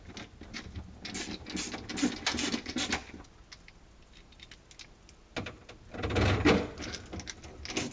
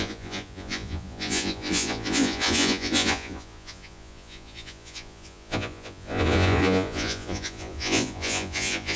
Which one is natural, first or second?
first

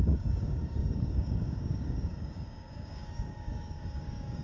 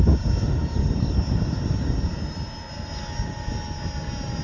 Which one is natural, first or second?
second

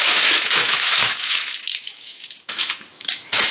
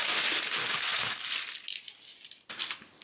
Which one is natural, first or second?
second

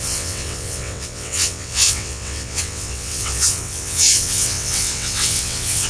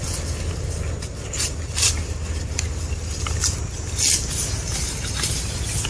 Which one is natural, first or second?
second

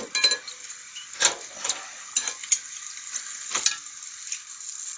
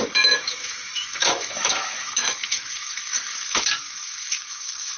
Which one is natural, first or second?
first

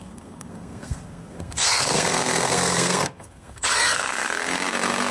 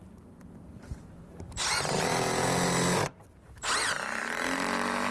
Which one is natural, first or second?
second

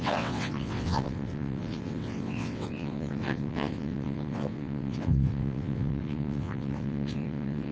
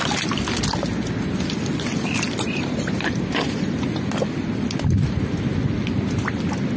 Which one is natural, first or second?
second